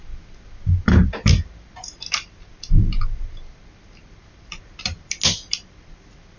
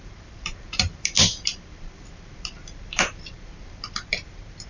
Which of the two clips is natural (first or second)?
first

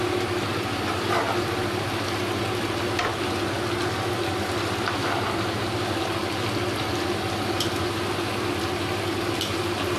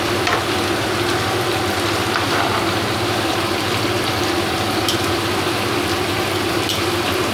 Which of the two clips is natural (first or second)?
first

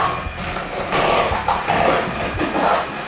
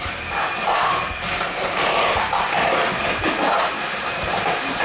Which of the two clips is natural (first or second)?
first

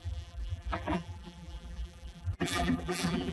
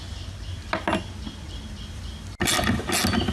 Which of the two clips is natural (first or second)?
second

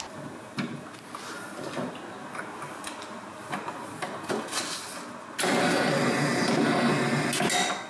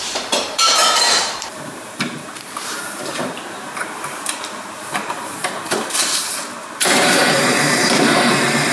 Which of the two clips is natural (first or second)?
first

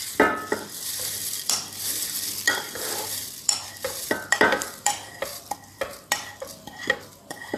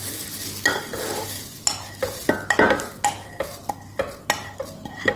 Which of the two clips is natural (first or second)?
second